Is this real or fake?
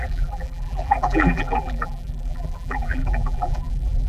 fake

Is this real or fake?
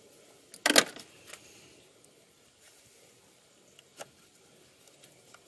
real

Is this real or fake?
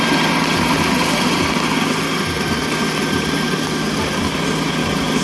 real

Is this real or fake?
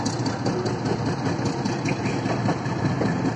real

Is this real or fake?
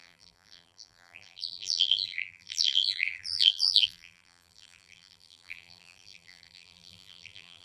fake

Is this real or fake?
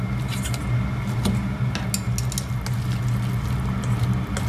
real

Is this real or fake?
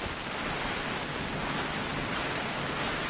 real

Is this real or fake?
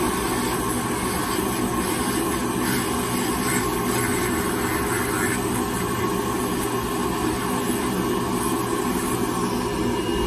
real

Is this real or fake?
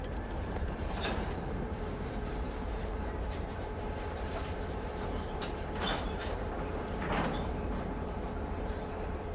fake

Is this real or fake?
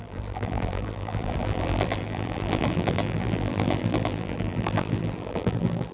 fake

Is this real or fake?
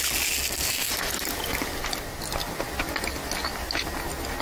real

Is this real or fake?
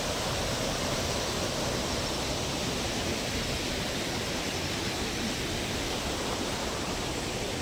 real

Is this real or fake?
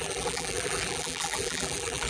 fake